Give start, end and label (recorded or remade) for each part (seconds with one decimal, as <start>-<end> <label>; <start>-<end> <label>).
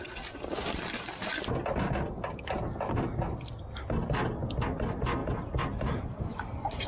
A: 0.0-5.2 recorded; 5.2-6.1 remade; 6.1-6.9 recorded